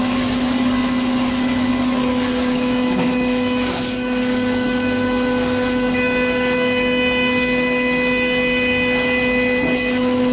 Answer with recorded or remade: remade